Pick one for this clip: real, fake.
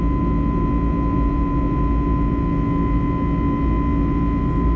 real